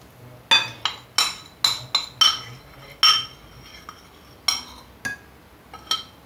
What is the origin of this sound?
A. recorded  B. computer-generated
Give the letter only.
A